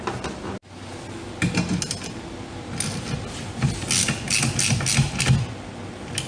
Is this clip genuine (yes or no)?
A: yes